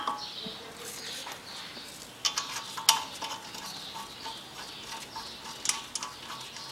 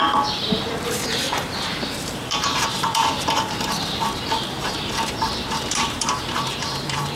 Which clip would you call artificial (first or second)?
second